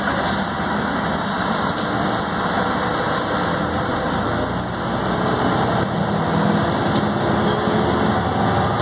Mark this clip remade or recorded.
recorded